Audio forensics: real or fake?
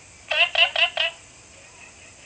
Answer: real